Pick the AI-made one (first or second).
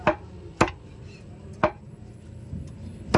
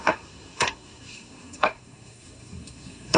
second